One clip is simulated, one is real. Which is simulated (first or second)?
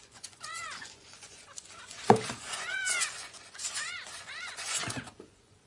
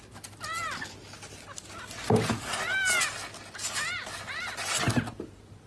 first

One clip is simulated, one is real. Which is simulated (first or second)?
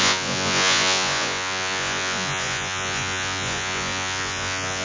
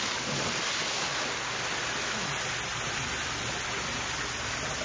first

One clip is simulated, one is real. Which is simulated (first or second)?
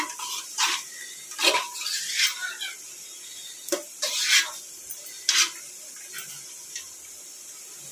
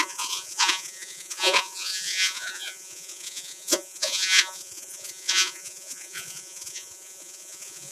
second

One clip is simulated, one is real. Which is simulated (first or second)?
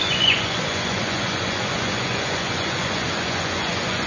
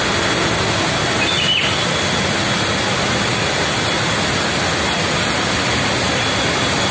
first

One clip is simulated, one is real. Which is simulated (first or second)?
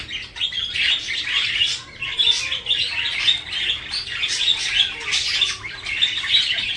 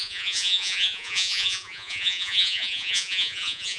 second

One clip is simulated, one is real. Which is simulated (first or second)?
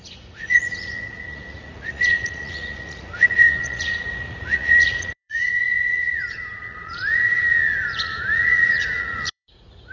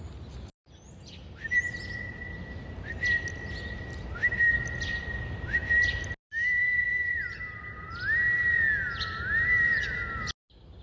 first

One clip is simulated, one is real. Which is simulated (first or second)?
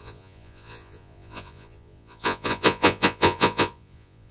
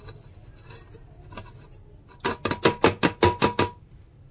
first